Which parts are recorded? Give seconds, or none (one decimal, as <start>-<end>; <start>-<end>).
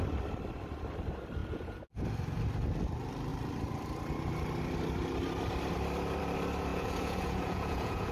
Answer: 0.0-1.4; 2.0-6.7